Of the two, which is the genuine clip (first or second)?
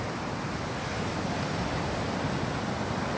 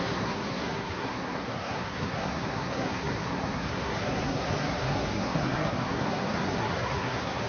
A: first